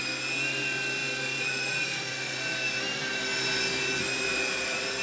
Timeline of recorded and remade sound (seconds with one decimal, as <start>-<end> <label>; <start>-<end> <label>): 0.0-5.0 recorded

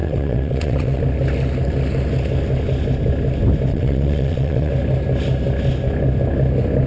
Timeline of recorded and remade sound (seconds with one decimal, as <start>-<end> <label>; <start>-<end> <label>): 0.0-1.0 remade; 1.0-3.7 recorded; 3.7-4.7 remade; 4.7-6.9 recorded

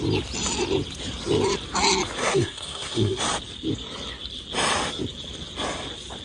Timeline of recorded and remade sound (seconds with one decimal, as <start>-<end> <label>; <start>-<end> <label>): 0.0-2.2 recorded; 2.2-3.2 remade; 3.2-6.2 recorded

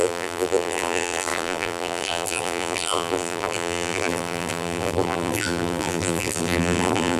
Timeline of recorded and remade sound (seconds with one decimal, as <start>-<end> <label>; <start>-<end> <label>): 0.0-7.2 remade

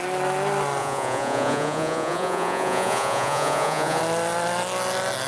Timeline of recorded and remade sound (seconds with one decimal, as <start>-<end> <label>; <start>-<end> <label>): 0.0-0.8 recorded; 0.8-4.0 remade; 4.0-5.3 recorded

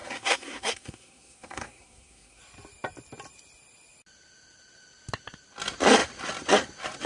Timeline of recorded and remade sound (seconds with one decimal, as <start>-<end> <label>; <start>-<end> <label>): 0.0-2.4 remade; 2.4-7.1 recorded

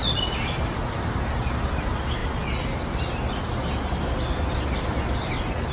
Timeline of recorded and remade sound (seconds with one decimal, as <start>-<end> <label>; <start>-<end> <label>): 0.0-5.7 recorded